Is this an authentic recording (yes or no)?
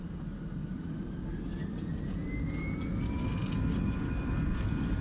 yes